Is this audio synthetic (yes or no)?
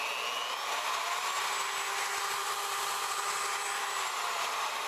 no